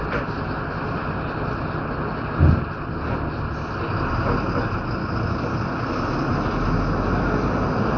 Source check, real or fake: real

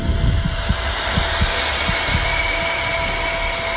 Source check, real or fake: real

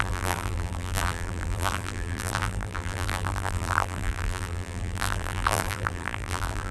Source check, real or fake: fake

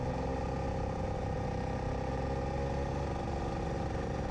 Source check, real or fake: real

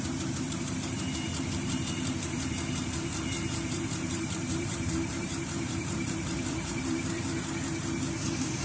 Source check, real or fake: fake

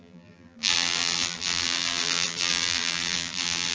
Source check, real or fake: fake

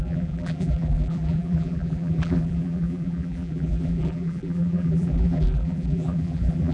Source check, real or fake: fake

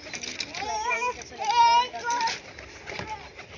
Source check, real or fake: real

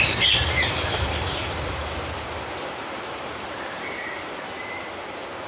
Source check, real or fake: fake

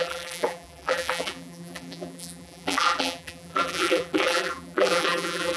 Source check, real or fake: fake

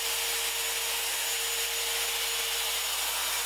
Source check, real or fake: real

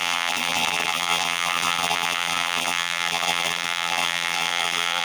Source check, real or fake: fake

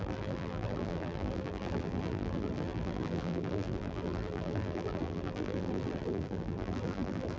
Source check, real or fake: fake